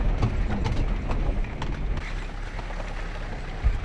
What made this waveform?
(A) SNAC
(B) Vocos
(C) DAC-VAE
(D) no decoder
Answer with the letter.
D